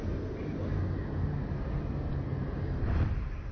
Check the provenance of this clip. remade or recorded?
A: recorded